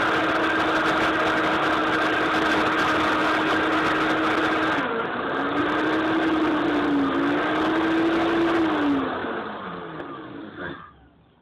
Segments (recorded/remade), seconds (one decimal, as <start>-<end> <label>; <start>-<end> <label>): 0.0-9.2 recorded; 9.2-10.0 remade; 10.0-11.4 recorded